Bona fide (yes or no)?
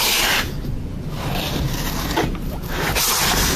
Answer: yes